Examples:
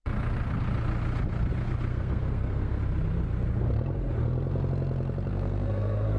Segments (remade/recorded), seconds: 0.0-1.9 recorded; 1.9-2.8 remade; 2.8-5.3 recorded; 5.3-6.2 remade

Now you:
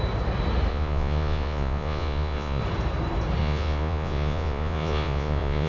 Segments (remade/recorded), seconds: 0.0-0.7 recorded; 0.7-2.6 remade; 2.6-3.4 recorded; 3.4-5.7 remade

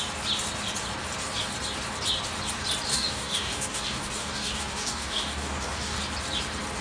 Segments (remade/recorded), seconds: 0.0-2.9 recorded; 2.9-6.0 remade; 6.0-6.8 recorded

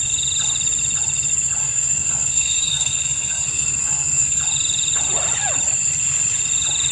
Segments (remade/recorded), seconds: 0.0-1.6 recorded; 1.6-4.4 remade; 4.4-6.9 recorded

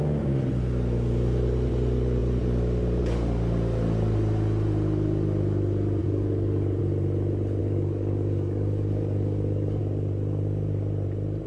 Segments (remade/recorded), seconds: 0.0-6.0 recorded; 6.0-6.8 remade; 6.8-7.6 recorded; 7.6-9.8 remade; 9.8-11.5 recorded

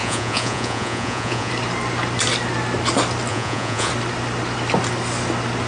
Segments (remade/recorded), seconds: 0.0-1.5 remade; 1.5-3.3 recorded; 3.3-3.9 remade; 3.9-5.7 recorded

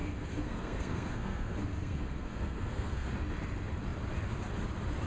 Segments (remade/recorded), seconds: 0.0-3.1 remade; 3.1-5.1 recorded